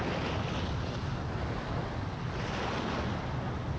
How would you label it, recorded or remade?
recorded